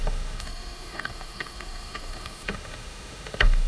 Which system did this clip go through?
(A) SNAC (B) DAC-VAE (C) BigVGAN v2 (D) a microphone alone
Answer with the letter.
B